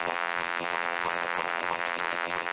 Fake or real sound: fake